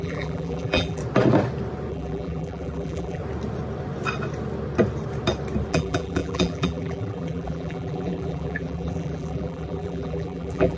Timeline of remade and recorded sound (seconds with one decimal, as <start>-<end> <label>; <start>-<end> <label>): 0.0-1.0 remade; 1.0-1.9 recorded; 1.9-3.2 remade; 3.2-5.7 recorded; 5.7-10.8 remade